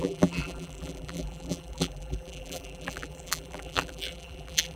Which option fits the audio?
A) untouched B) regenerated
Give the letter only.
B